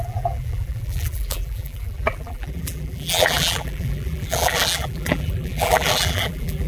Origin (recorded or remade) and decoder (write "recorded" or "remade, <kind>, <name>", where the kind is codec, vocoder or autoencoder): remade, vocoder, BigVGAN v2